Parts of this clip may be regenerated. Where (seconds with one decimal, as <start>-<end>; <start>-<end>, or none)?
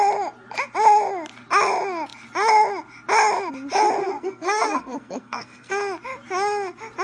4.0-5.7